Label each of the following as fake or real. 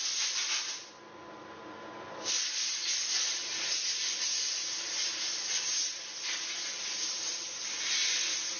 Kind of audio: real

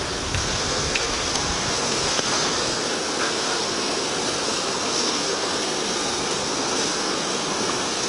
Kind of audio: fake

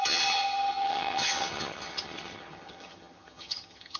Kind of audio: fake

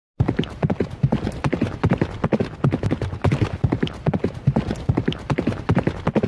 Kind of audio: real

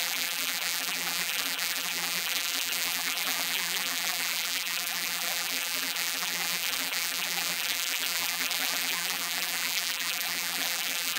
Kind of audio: fake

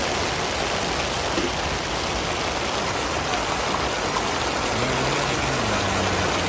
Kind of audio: real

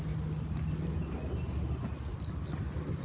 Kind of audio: real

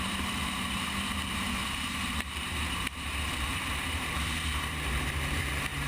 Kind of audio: fake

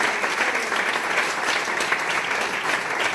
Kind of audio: fake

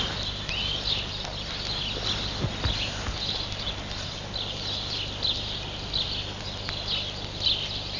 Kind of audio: real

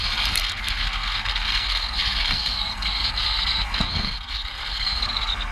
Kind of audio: fake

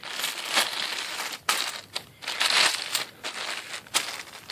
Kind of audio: real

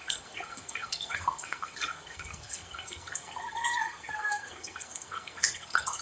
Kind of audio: fake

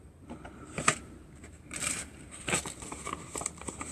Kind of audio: fake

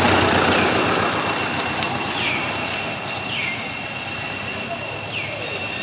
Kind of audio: real